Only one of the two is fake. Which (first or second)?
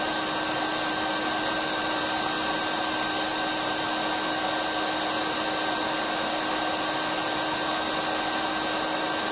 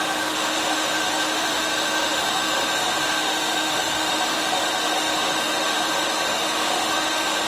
second